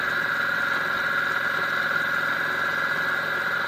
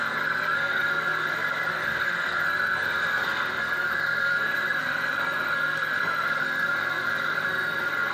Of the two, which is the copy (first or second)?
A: second